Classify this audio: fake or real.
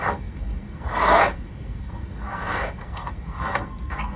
fake